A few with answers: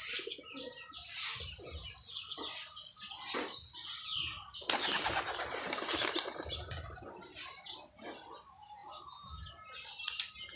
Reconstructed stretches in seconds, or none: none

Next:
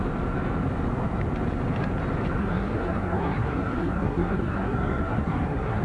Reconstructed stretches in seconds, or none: 2.4-5.8 (codec, SNAC)

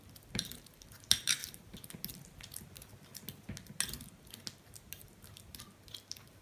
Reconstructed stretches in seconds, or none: none

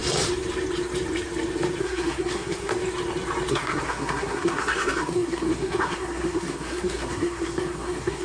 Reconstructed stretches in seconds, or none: 1.8-2.7 (codec, SNAC); 3.5-8.2

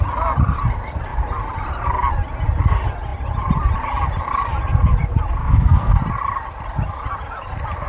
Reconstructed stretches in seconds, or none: 5.4-6.0 (codec, SNAC)

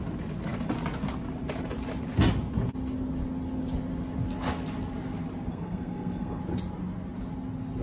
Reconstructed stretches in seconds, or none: 5.5-6.4 (codec, SNAC)

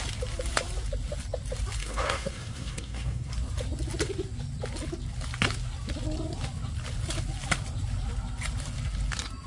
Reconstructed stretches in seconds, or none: 1.8-3.3 (codec, SNAC)

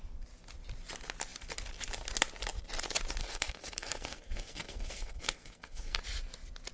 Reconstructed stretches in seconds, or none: 3.2-6.0 (codec, SNAC)